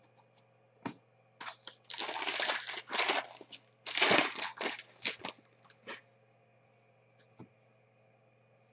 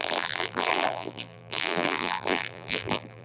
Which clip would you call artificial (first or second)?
second